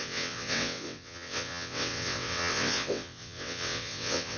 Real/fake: fake